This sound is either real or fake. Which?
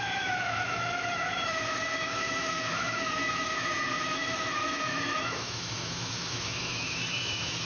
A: fake